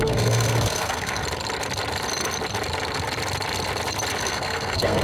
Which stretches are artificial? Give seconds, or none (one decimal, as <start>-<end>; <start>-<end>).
0.0-1.2; 4.2-5.0